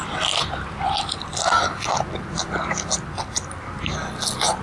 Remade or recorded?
recorded